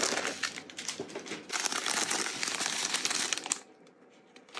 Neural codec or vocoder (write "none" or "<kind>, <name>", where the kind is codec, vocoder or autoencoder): none